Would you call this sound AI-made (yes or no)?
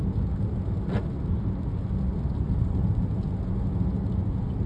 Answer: no